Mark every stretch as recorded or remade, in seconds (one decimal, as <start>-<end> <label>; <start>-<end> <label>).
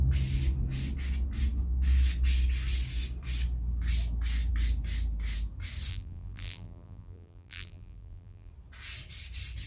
0.0-5.9 recorded; 5.9-8.5 remade; 8.5-9.7 recorded